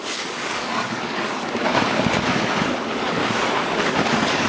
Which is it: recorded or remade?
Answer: remade